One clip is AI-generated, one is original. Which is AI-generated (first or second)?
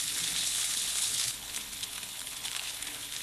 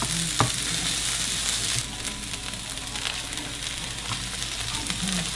first